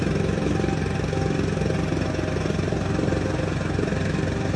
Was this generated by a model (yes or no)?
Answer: no